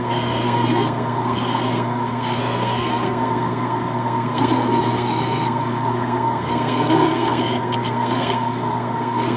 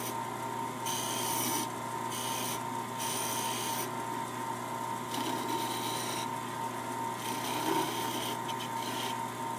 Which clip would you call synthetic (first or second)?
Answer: first